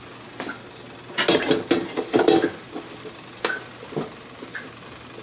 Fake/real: real